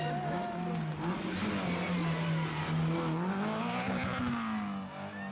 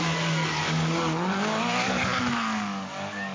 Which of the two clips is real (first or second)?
first